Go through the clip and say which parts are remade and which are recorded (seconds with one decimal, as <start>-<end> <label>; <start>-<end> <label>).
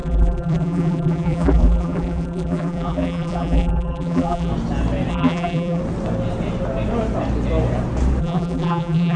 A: 0.0-4.5 remade; 4.5-5.1 recorded; 5.1-5.8 remade; 5.8-8.2 recorded; 8.2-9.2 remade